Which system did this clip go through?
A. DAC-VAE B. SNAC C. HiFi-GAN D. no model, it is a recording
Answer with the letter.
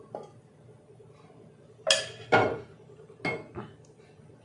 D